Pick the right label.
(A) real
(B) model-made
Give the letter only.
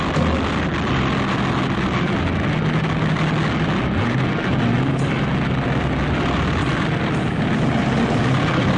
A